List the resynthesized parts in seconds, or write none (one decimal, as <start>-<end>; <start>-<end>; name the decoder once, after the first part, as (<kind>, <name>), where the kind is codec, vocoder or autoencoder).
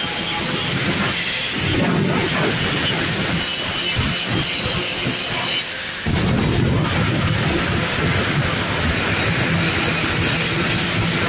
none